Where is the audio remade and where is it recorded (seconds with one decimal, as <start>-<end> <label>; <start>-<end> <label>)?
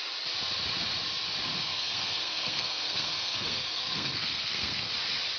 0.0-1.7 recorded; 1.7-4.9 remade; 4.9-5.4 recorded